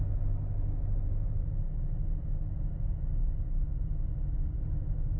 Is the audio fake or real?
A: real